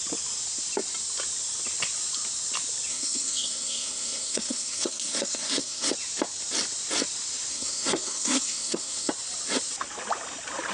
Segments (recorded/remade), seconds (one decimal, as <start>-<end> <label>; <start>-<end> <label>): 0.0-2.9 recorded; 2.9-5.9 remade; 5.9-7.5 recorded; 7.5-9.1 remade; 9.1-10.7 recorded